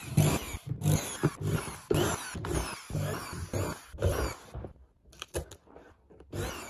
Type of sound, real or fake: real